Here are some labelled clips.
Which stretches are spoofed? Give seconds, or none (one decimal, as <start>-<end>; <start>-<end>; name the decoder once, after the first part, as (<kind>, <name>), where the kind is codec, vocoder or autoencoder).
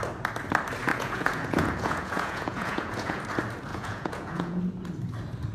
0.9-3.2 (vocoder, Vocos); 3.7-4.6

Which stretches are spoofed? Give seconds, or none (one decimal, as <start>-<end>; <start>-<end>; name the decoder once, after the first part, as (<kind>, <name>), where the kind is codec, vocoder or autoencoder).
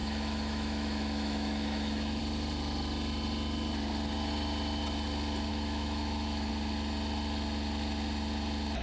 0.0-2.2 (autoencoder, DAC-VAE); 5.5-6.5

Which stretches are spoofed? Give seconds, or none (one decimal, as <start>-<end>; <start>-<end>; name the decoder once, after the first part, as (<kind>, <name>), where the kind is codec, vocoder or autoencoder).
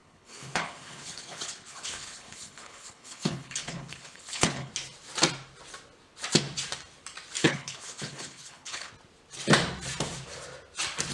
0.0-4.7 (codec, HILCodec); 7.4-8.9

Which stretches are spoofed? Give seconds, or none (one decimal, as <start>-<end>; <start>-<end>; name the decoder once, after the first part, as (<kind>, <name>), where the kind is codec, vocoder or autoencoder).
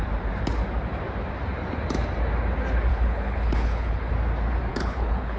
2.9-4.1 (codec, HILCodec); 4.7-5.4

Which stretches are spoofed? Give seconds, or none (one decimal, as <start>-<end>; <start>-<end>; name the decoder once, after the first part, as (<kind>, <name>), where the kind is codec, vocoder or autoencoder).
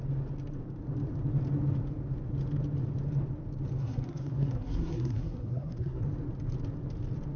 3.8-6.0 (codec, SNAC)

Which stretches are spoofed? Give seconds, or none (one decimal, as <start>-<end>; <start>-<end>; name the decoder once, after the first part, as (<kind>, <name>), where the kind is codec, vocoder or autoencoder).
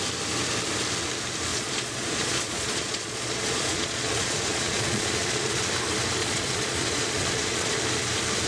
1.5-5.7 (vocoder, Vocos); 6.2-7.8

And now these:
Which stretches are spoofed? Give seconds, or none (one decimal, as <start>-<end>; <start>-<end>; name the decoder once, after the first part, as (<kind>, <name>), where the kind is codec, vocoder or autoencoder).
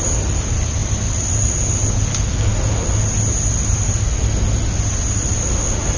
none